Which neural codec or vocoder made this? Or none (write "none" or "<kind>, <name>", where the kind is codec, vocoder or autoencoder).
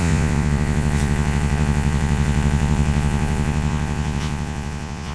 vocoder, Vocos